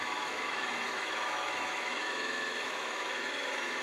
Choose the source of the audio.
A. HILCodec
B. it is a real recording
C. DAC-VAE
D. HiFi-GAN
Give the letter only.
C